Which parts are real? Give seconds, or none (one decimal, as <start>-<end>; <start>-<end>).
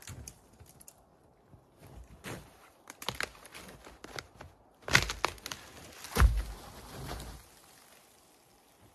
0.0-8.9